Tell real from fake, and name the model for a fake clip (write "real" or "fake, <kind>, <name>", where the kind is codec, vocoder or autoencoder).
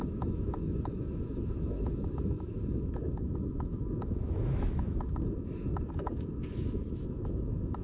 fake, autoencoder, DAC-VAE